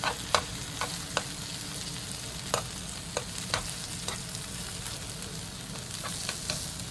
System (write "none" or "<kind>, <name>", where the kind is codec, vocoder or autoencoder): none